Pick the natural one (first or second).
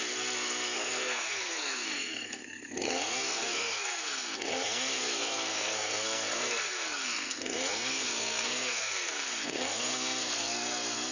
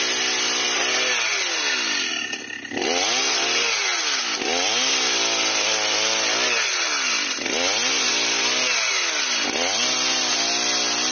second